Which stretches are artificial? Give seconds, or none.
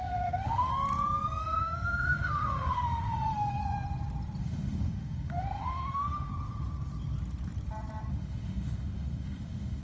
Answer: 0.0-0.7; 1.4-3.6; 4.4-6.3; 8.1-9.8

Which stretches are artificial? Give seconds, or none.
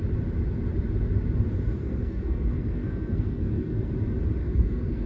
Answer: 1.8-3.9; 4.4-5.1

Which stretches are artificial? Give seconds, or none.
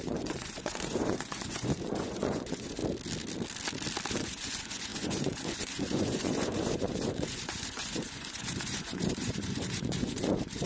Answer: 0.0-2.8; 4.1-10.7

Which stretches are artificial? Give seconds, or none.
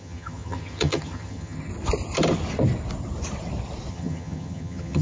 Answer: 0.0-1.7; 3.9-5.0